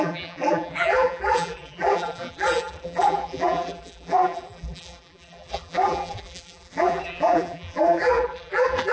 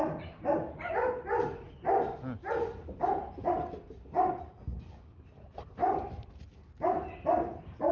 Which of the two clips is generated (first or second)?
first